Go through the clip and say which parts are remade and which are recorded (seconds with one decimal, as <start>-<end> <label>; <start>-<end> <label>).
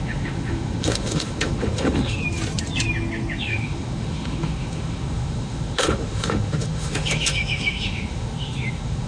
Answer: 0.0-2.2 remade; 2.2-3.4 recorded; 3.4-9.1 remade